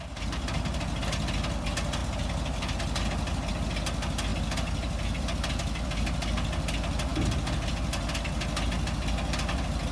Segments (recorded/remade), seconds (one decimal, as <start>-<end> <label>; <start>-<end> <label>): 0.0-9.9 recorded